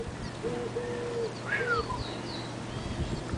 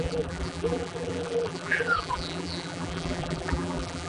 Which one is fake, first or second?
second